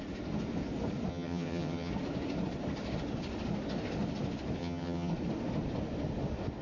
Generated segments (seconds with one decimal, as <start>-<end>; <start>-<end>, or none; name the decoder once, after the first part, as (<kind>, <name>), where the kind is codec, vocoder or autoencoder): 1.1-1.9 (vocoder, HiFi-GAN); 4.6-5.1